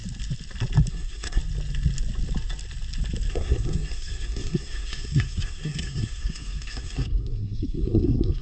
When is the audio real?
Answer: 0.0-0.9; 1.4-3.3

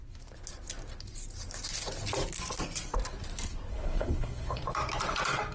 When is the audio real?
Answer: 0.0-3.7; 4.6-5.5

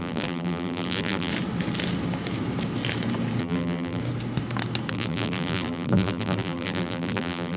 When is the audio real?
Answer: 1.3-3.4; 4.0-4.9

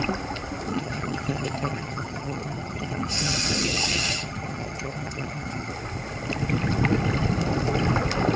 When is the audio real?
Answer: 0.0-0.7; 5.7-8.4

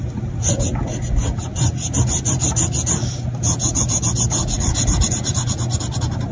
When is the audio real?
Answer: 0.0-6.3

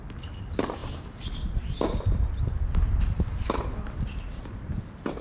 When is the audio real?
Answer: 0.0-5.2